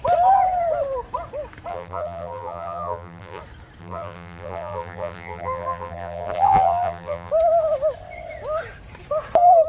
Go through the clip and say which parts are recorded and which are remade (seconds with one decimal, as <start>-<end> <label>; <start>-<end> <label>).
0.0-1.7 recorded; 1.7-3.4 remade; 3.4-3.8 recorded; 3.8-7.3 remade; 7.3-9.7 recorded